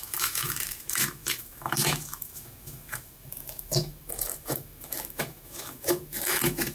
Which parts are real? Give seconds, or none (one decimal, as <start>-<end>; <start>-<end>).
none